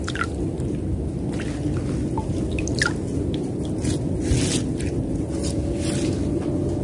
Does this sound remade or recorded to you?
recorded